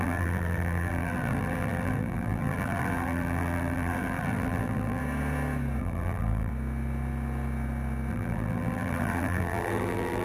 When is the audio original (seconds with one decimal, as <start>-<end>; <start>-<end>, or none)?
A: 5.0-5.8; 6.5-8.1